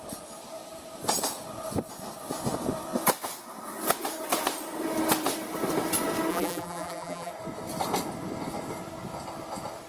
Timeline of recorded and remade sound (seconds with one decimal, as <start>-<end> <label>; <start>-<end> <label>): 0.0-6.3 recorded; 6.3-7.3 remade; 7.3-9.9 recorded